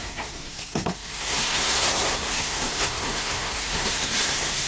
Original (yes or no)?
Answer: no